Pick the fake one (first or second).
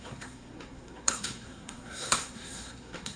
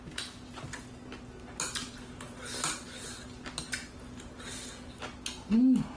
first